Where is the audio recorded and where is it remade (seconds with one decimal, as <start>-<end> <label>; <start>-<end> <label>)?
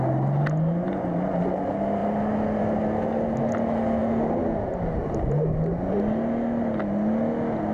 0.0-7.7 recorded